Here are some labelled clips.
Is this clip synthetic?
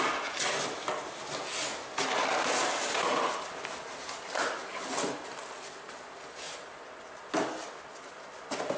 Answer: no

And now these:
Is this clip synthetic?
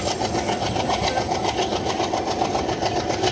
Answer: no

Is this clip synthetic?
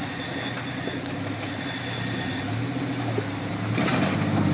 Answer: no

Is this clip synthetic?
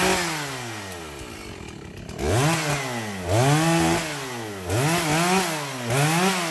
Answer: no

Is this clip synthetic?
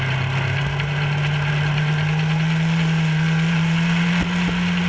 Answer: no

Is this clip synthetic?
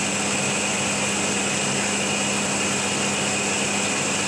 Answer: no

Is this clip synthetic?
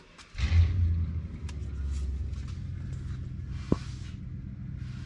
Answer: no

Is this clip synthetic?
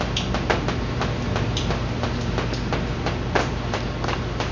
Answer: no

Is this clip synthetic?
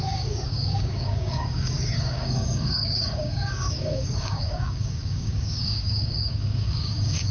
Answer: yes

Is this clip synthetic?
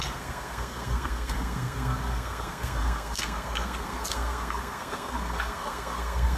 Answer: yes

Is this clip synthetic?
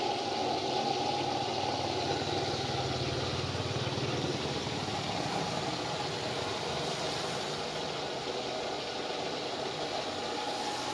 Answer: no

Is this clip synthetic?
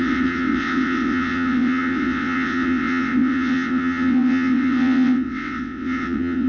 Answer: yes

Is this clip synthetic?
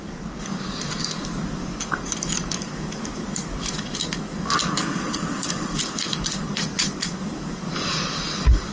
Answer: yes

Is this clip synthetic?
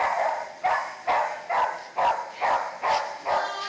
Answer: no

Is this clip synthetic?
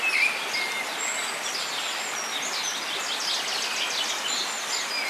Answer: no